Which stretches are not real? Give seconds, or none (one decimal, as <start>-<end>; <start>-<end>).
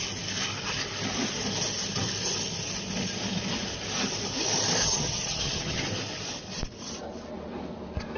4.8-5.8